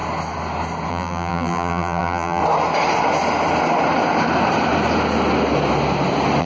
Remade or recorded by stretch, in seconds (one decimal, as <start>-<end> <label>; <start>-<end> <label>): 0.0-0.9 recorded; 0.9-2.4 remade; 2.4-6.4 recorded

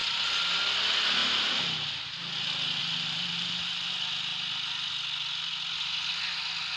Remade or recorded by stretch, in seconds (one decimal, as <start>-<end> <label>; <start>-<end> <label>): 0.0-1.2 recorded; 1.2-2.2 remade; 2.2-2.8 recorded; 2.8-3.9 remade; 3.9-6.8 recorded

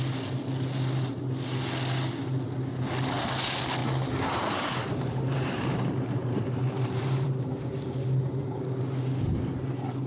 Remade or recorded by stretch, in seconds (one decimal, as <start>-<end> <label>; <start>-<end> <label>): 0.0-3.8 recorded; 3.8-8.7 remade; 8.7-10.1 recorded

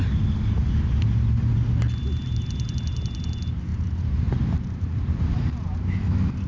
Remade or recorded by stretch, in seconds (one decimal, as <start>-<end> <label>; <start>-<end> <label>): 0.0-3.7 recorded; 3.7-6.1 remade; 6.1-6.5 recorded

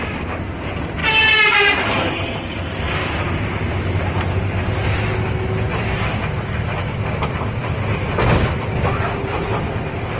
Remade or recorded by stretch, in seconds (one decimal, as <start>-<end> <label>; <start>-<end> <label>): 0.0-1.0 recorded; 1.0-2.1 remade; 2.1-3.0 recorded; 3.0-4.0 remade; 4.0-7.6 recorded; 7.6-8.1 remade; 8.1-10.2 recorded

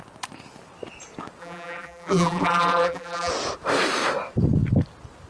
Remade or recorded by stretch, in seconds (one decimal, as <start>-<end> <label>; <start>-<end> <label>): 0.0-1.4 recorded; 1.4-3.3 remade; 3.3-5.3 recorded

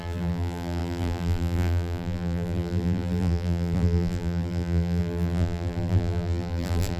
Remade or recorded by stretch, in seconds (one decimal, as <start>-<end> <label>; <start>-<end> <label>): 0.0-7.0 remade

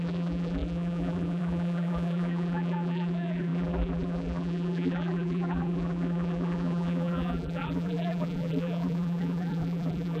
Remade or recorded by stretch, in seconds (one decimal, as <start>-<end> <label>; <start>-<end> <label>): 0.0-10.2 remade